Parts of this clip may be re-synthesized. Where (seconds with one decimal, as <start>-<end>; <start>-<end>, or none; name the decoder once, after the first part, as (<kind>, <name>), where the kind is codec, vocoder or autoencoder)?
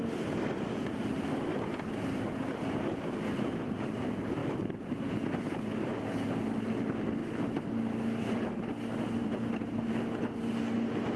1.5-3.2 (vocoder, BigVGAN v2); 4.4-5.0; 9.2-9.9